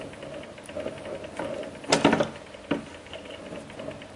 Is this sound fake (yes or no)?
no